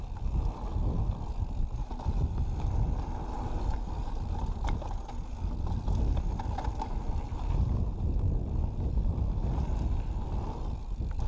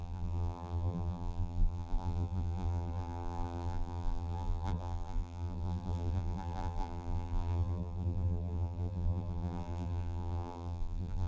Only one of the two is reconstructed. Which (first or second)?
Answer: second